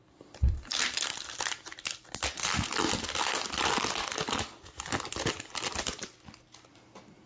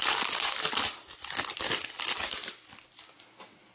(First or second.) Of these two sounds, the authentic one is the first